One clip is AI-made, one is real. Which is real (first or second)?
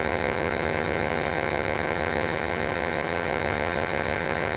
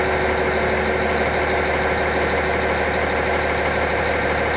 second